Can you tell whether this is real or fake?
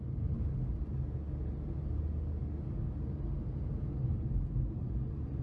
real